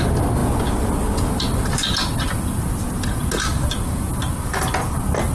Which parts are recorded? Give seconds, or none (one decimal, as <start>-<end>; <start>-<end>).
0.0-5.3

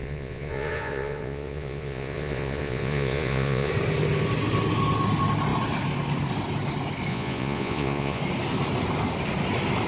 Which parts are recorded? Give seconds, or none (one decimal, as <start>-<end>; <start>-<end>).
3.7-7.1; 8.2-9.9

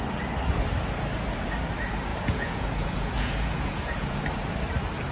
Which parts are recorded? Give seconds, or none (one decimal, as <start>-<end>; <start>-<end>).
0.0-2.1; 4.2-5.1